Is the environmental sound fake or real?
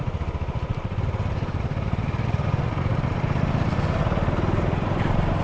fake